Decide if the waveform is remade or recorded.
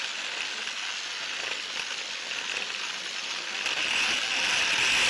recorded